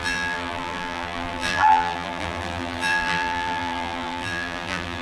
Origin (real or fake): fake